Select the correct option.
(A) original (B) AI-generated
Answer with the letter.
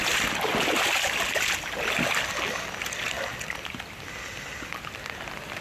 A